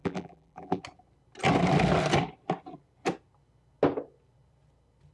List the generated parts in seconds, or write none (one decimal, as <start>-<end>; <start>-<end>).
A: 0.0-0.8